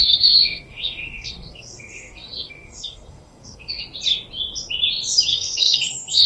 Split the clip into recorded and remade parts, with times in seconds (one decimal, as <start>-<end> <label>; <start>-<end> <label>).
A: 0.0-3.8 remade; 3.8-5.3 recorded; 5.3-6.3 remade